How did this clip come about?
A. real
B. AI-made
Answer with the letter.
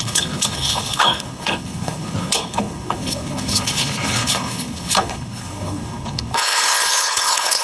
B